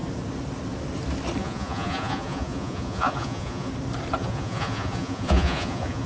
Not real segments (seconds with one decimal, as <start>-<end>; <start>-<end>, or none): 1.4-3.7; 4.2-6.1